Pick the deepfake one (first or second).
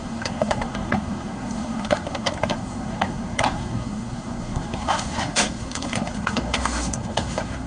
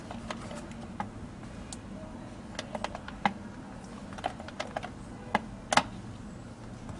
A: first